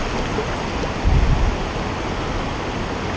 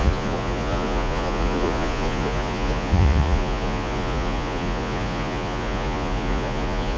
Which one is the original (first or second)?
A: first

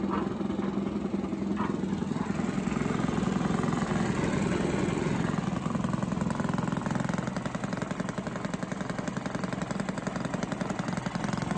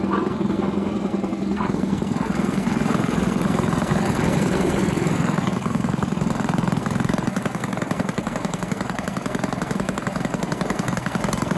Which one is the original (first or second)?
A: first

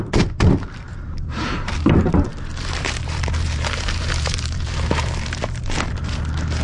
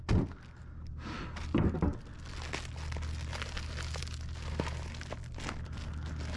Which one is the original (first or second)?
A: second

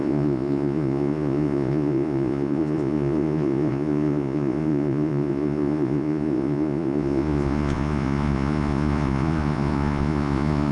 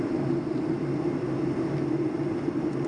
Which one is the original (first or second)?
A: second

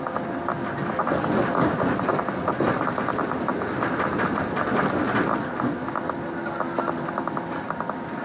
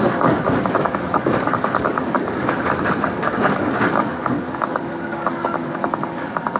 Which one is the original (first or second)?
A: first